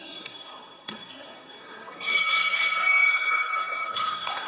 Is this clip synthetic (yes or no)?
yes